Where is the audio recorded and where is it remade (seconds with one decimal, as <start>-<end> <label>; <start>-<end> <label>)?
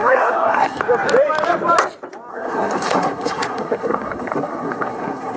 0.0-0.8 remade; 0.8-2.3 recorded; 2.3-5.4 remade